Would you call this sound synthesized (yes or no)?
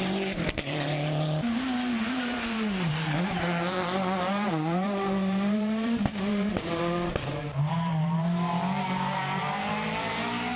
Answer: yes